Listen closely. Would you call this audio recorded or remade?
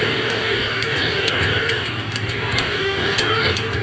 remade